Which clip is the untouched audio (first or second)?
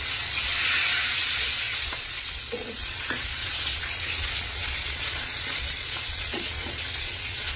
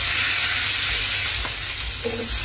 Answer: second